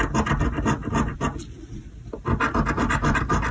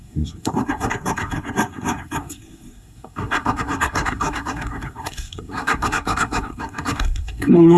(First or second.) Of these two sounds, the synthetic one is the second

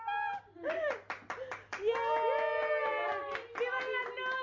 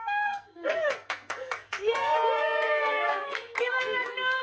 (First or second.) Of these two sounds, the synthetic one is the second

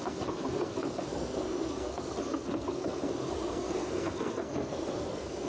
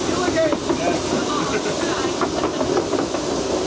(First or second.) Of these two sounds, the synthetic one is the first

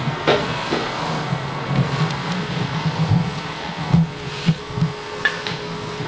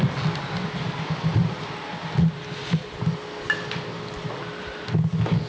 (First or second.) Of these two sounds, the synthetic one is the first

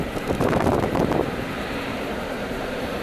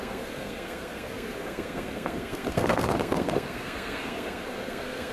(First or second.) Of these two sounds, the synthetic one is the second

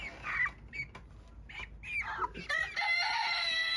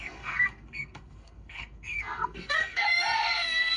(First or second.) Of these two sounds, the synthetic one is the second